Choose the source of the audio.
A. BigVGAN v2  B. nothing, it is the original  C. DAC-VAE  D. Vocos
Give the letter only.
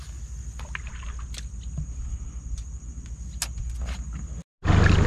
B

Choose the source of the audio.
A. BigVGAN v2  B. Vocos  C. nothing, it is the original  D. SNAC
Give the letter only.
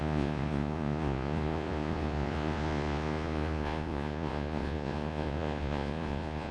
B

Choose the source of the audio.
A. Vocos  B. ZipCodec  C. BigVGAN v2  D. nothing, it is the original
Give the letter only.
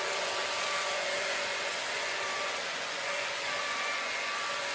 A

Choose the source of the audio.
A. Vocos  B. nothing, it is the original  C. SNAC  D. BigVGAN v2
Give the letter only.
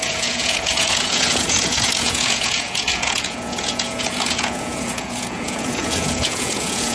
A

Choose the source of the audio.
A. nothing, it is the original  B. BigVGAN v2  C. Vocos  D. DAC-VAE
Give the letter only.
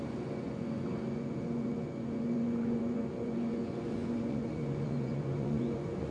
C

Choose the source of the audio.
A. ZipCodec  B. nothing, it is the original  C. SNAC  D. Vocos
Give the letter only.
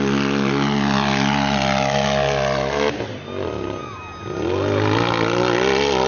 B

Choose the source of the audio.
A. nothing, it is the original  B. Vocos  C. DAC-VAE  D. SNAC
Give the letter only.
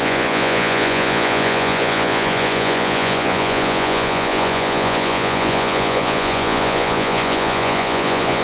B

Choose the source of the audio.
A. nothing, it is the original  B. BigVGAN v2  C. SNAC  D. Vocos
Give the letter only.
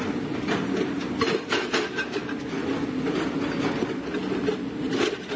A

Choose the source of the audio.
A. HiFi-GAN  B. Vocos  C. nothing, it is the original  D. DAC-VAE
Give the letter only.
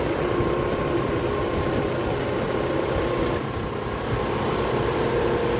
C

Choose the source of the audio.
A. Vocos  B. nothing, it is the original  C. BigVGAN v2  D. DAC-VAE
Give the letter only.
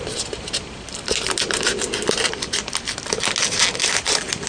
B